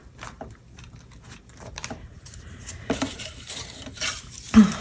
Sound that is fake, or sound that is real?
fake